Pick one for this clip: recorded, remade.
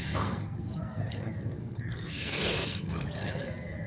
remade